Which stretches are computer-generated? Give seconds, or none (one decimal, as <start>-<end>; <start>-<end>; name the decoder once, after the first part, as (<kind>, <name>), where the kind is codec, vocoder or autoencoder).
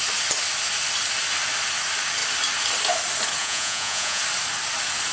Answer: 3.4-4.2 (vocoder, Vocos)